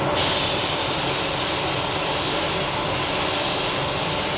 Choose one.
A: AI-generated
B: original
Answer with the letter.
B